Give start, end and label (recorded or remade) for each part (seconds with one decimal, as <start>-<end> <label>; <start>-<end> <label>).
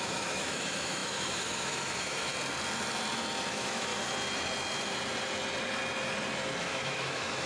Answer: 0.0-2.3 remade; 2.3-3.5 recorded; 3.5-3.9 remade; 3.9-6.6 recorded; 6.6-7.5 remade